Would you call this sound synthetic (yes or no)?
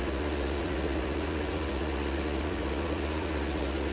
yes